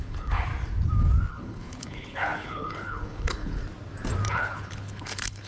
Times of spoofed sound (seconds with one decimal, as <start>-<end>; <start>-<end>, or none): 0.0-0.5; 1.3-3.6; 4.3-5.5